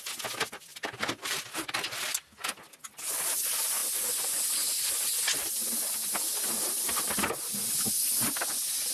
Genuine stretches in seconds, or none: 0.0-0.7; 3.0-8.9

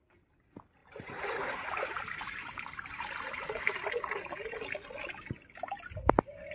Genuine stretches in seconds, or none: 0.0-0.8; 3.9-6.5

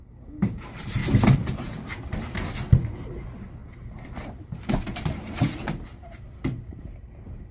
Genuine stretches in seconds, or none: 0.0-3.6

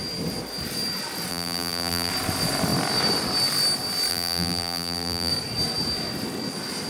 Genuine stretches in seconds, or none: 0.0-1.3; 2.1-4.1; 5.3-6.9

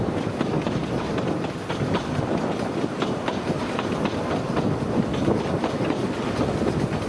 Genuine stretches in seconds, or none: 0.0-7.1

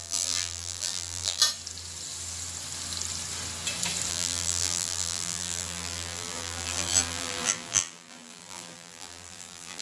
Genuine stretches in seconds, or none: 1.4-4.1